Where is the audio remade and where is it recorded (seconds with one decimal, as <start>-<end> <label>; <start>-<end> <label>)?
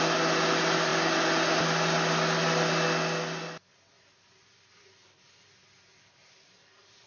0.0-7.1 recorded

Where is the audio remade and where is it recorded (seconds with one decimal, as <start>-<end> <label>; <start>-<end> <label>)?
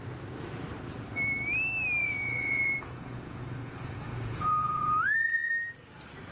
0.0-2.0 recorded; 2.0-5.5 remade; 5.5-6.3 recorded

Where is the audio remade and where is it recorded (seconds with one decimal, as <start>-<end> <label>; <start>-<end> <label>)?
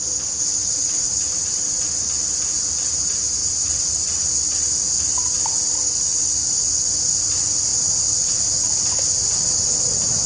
0.0-0.6 recorded; 0.6-1.9 remade; 1.9-3.4 recorded; 3.4-4.3 remade; 4.3-10.3 recorded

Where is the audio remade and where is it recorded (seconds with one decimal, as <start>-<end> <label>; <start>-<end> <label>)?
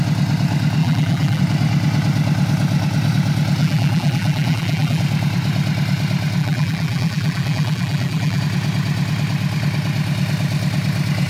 0.0-0.8 recorded; 0.8-1.4 remade; 1.4-3.6 recorded; 3.6-5.0 remade; 5.0-6.4 recorded; 6.4-8.4 remade; 8.4-11.3 recorded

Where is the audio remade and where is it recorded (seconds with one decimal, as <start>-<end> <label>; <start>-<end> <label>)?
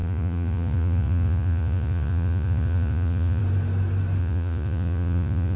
0.0-3.4 remade; 3.4-4.2 recorded; 4.2-5.6 remade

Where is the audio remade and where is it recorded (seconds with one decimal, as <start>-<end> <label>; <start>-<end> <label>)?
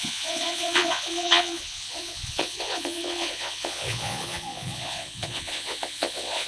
0.0-6.5 remade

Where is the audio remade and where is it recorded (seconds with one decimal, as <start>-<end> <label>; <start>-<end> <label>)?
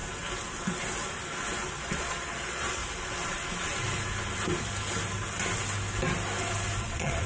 0.0-1.7 recorded; 1.7-2.8 remade; 2.8-6.8 recorded; 6.8-7.3 remade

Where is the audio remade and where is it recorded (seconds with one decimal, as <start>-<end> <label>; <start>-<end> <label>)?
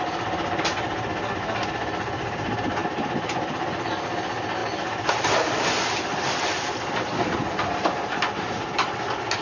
0.0-9.4 recorded